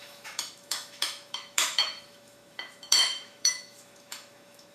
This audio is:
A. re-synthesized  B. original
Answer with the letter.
A